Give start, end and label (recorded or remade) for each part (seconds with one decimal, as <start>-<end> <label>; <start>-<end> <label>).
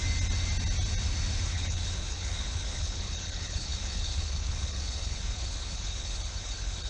0.0-1.5 recorded; 1.5-6.9 remade